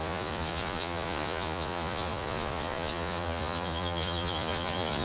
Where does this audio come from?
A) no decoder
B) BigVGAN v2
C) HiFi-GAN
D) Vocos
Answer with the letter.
D